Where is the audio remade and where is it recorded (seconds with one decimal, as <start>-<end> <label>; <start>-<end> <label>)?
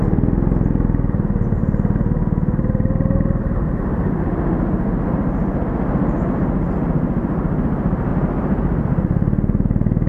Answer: 0.0-10.1 recorded